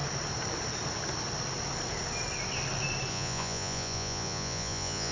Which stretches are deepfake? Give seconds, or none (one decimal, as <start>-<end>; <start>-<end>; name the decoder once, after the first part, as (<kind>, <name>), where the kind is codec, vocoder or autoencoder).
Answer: 3.1-5.1 (vocoder, Vocos)